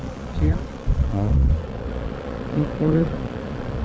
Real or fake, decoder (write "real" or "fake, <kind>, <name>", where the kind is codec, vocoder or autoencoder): fake, vocoder, Vocos